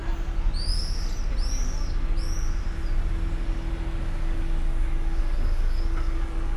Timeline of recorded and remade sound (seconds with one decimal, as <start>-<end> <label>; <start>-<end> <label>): 0.0-4.0 recorded; 4.0-6.6 remade

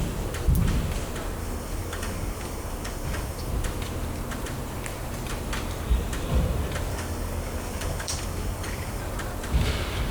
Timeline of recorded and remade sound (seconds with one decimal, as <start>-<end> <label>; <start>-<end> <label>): 0.0-1.4 recorded; 1.4-3.5 remade; 3.5-6.9 recorded; 6.9-9.0 remade; 9.0-10.1 recorded

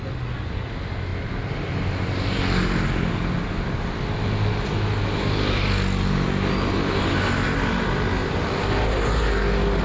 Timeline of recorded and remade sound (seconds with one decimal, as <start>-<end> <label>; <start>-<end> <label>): 0.0-8.2 recorded; 8.2-9.4 remade; 9.4-9.8 recorded

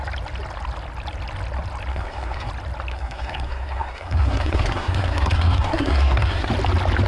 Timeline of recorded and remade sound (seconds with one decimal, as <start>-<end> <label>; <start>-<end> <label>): 0.0-1.9 recorded; 1.9-2.5 remade; 2.5-2.9 recorded; 2.9-6.5 remade; 6.5-7.1 recorded

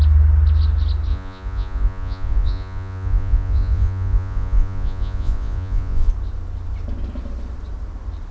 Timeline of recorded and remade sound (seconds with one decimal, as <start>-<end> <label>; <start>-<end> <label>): 0.0-1.1 recorded; 1.1-6.1 remade; 6.1-8.3 recorded

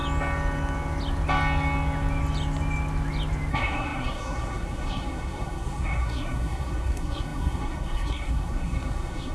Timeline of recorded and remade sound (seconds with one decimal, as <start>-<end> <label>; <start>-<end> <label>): 0.0-3.5 recorded; 3.5-9.3 remade

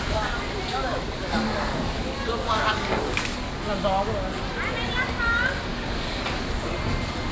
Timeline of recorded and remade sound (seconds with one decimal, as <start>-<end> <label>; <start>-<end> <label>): 0.0-0.7 recorded; 0.7-3.5 remade; 3.5-5.7 recorded; 5.7-6.4 remade; 6.4-7.3 recorded

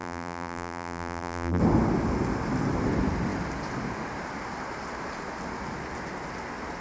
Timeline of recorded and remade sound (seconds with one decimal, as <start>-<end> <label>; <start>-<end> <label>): 0.0-1.6 remade; 1.6-6.8 recorded